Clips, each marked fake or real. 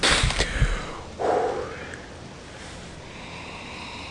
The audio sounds real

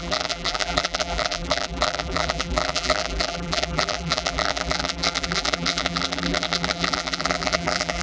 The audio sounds fake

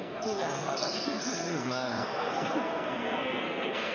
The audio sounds fake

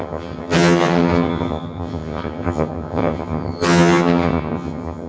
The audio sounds fake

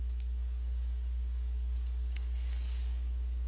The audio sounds fake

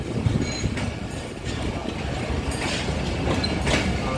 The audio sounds real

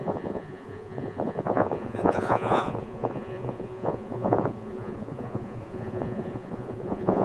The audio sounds fake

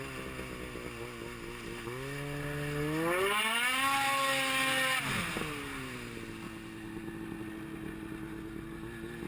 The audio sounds real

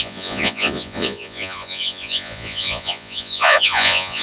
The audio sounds fake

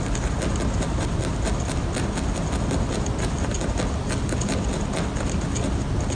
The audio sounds real